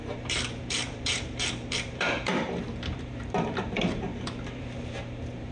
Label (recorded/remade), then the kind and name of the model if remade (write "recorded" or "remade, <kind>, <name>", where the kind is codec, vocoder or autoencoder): remade, vocoder, BigVGAN v2